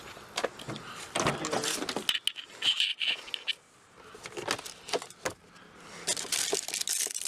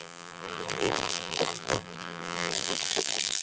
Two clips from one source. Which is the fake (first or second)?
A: second